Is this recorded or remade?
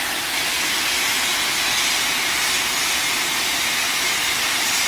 recorded